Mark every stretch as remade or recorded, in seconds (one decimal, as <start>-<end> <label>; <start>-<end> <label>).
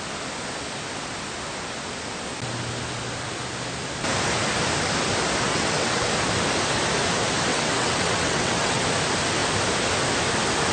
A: 0.0-5.5 recorded; 5.5-6.1 remade; 6.1-7.5 recorded; 7.5-8.8 remade; 8.8-10.7 recorded